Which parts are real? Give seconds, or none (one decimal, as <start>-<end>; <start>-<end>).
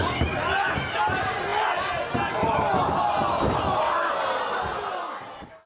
0.0-5.7